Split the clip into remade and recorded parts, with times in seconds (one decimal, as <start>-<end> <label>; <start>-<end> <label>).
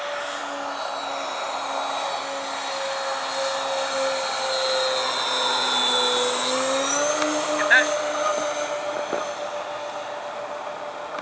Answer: 0.0-11.2 recorded